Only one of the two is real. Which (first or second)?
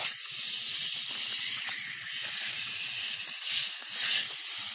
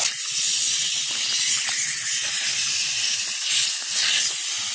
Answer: second